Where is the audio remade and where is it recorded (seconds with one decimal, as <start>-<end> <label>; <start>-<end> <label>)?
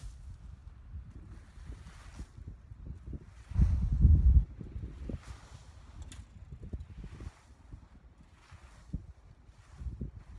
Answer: 0.0-10.4 recorded